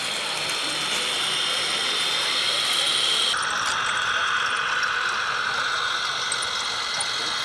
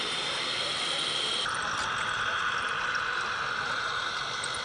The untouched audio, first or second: first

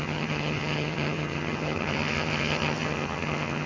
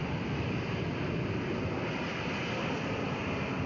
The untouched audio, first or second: second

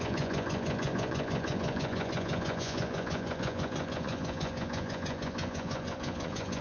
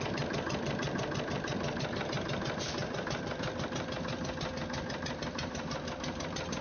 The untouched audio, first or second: second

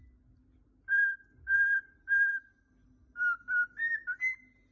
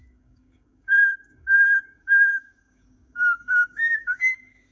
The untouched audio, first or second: first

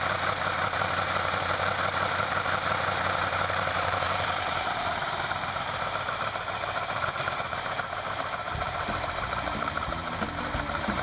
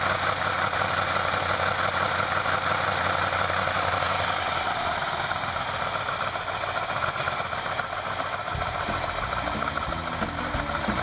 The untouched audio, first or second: second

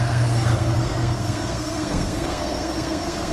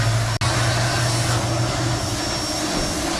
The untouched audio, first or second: second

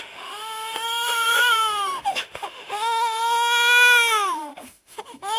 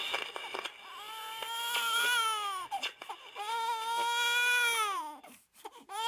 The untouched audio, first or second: second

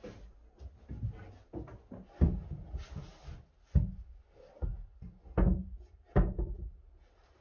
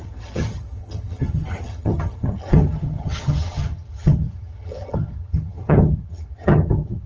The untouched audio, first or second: first